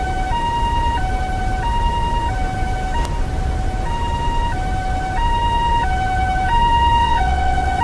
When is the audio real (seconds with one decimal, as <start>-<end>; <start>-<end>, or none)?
0.0-7.0